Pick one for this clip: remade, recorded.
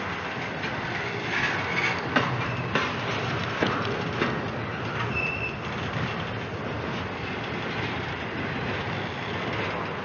recorded